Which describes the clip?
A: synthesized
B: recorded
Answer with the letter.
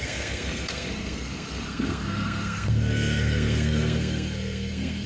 A